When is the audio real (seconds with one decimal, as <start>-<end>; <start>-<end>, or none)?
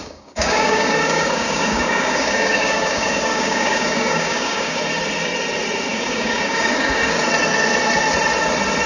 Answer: 4.8-5.9; 7.2-8.9